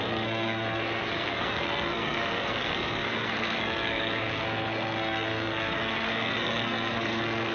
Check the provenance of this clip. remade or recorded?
remade